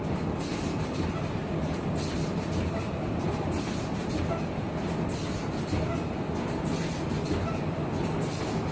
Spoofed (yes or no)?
no